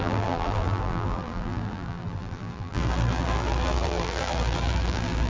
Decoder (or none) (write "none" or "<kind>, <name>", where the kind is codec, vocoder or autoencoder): vocoder, BigVGAN v2